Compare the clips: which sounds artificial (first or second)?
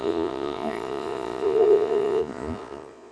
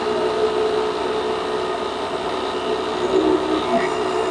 first